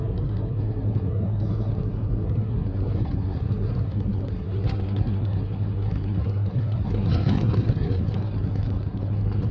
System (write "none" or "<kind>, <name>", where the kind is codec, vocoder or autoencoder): codec, SNAC